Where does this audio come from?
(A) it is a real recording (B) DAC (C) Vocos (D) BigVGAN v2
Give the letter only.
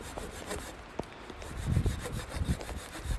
A